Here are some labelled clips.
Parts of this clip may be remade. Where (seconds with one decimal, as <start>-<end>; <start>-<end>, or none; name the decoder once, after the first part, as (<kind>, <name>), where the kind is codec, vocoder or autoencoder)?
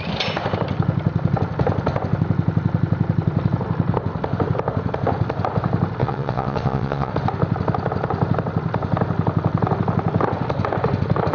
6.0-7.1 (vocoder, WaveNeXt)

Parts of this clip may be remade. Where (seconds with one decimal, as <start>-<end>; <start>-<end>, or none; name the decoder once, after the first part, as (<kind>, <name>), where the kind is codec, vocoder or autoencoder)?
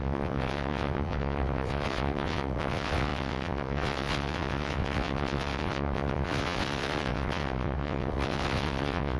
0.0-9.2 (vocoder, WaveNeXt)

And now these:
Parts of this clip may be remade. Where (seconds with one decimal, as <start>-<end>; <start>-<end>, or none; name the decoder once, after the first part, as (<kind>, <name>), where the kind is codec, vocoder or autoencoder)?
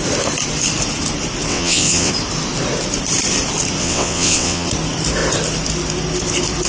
1.5-2.1 (vocoder, WaveNeXt); 3.8-4.7